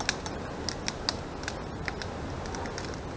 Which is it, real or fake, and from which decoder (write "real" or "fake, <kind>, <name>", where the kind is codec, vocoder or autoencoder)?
real